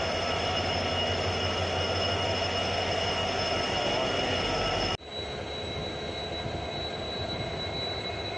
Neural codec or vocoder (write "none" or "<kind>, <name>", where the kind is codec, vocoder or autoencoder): none